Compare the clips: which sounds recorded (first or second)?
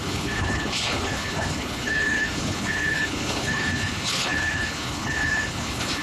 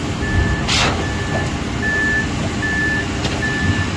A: second